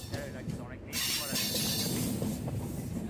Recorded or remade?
recorded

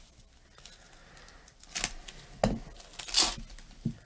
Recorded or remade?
recorded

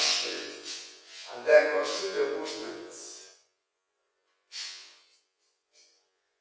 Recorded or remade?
remade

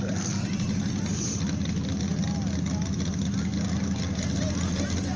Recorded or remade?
recorded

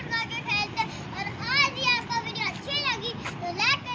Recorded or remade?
recorded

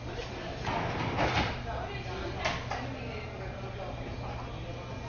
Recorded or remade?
recorded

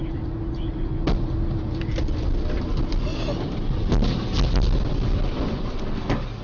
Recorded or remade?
recorded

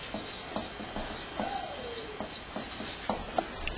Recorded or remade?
recorded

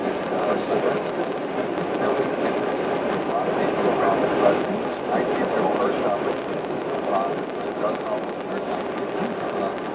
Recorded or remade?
recorded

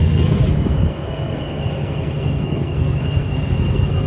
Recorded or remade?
remade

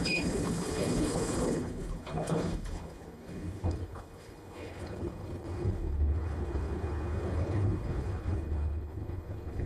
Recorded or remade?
remade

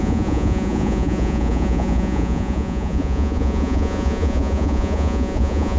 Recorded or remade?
remade